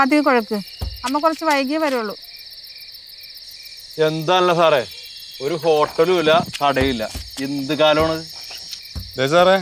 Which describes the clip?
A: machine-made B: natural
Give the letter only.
B